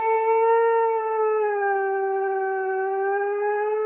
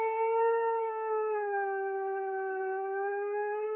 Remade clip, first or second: second